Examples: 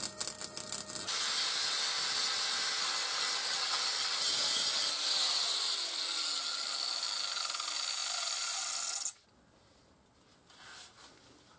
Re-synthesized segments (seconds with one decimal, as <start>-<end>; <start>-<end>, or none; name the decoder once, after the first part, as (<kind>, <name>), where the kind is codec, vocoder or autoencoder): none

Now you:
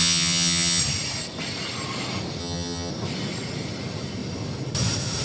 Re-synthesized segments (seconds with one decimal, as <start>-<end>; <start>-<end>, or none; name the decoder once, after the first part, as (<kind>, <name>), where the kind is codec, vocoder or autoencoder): 0.0-0.8 (vocoder, HiFi-GAN); 2.4-2.9

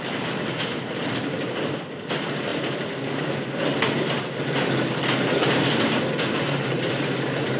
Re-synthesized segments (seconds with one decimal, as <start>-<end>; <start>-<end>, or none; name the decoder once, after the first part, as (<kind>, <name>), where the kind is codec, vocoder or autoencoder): none

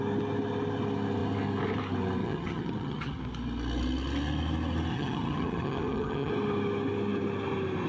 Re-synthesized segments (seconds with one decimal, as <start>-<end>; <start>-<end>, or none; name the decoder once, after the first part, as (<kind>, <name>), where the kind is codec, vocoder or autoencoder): 2.2-3.2 (vocoder, HiFi-GAN); 4.9-6.3

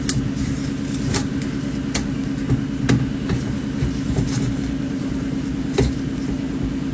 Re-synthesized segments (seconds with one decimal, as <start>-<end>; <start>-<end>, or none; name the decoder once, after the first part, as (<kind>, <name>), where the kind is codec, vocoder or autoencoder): none

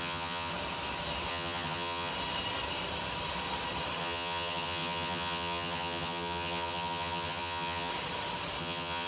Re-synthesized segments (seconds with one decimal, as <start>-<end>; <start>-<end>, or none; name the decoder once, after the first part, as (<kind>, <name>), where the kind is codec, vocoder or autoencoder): 0.0-0.5 (vocoder, HiFi-GAN); 1.3-2.1; 4.0-7.9; 8.6-9.1

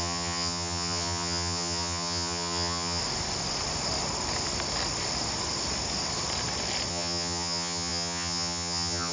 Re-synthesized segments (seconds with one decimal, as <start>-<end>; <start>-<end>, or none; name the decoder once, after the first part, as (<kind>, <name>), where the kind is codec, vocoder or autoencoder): 0.0-3.0 (vocoder, HiFi-GAN); 6.9-9.1

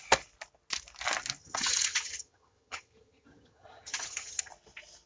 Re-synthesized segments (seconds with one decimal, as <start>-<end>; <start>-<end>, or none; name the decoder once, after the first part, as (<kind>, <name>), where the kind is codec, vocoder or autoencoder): 1.4-4.5 (vocoder, HiFi-GAN)